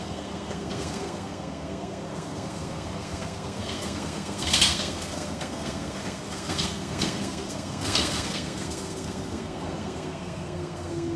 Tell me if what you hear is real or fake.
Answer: fake